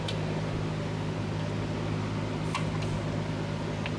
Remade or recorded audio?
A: recorded